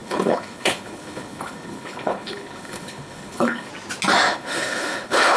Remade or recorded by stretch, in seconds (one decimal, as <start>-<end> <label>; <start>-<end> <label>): 0.0-3.7 remade; 3.7-4.3 recorded; 4.3-5.4 remade